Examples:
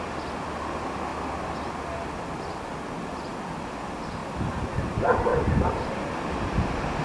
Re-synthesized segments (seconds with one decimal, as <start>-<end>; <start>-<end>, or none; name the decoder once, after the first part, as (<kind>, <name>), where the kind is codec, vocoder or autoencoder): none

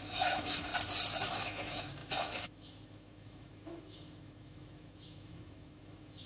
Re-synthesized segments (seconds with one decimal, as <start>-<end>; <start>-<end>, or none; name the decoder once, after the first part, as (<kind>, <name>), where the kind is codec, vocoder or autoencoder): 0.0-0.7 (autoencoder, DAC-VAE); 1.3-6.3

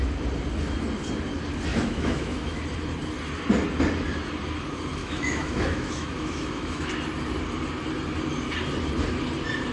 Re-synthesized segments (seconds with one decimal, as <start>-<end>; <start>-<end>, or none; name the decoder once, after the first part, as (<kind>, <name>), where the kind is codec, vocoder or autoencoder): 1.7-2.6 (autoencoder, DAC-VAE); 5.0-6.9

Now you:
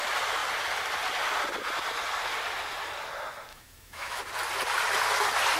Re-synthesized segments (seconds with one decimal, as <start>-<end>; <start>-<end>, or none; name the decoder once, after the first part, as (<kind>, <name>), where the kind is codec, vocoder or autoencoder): 3.5-4.2 (autoencoder, DAC-VAE)

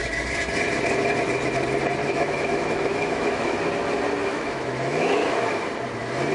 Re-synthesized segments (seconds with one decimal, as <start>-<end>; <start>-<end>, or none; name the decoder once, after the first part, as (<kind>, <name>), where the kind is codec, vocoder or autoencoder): 2.0-3.6 (autoencoder, DAC-VAE); 4.3-5.5